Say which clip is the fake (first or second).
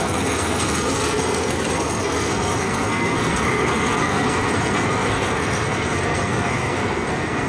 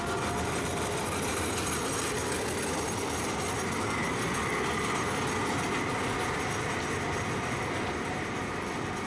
first